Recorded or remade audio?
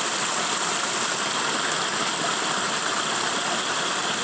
recorded